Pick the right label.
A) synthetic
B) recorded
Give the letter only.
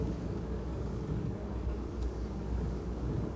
A